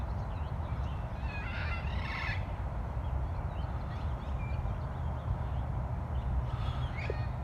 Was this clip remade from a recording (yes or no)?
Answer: no